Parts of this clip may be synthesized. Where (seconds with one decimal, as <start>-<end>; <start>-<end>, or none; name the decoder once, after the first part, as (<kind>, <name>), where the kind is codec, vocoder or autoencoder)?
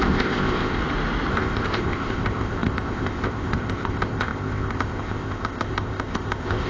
0.0-0.8 (codec, ZipCodec); 1.3-6.7